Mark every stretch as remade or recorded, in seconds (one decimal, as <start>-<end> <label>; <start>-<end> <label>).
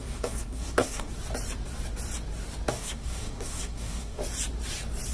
0.0-1.1 remade; 1.1-2.7 recorded; 2.7-4.2 remade; 4.2-5.1 recorded